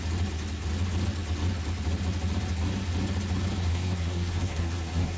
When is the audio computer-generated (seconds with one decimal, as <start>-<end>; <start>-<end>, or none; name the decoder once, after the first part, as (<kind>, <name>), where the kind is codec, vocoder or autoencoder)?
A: 3.7-5.2 (codec, SNAC)